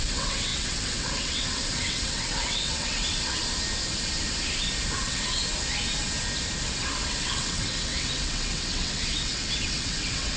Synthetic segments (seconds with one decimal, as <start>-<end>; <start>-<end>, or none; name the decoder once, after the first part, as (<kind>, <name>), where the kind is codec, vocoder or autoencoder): 0.0-3.4 (vocoder, WaveNeXt); 5.0-5.4; 7.1-10.4